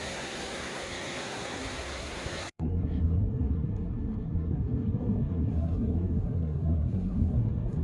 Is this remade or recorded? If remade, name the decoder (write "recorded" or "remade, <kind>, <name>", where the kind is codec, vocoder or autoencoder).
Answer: remade, codec, SNAC